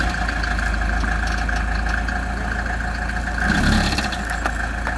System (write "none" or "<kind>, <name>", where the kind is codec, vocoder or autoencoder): none